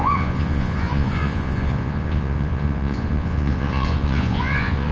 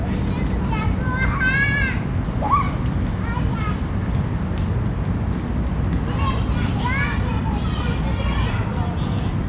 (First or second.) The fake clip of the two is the first